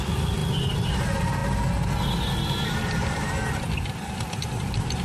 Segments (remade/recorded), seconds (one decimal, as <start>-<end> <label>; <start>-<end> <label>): 0.0-0.4 remade; 0.4-0.9 recorded; 0.9-1.4 remade; 1.4-3.8 recorded; 3.8-5.0 remade